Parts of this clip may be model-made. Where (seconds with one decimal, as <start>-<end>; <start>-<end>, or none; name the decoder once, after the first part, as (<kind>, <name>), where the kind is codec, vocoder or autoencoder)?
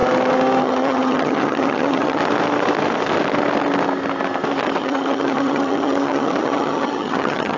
0.6-2.2 (vocoder, HiFi-GAN); 4.8-7.6